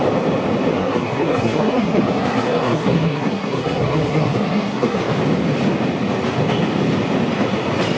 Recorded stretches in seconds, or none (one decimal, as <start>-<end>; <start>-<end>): 0.0-0.7; 5.0-8.0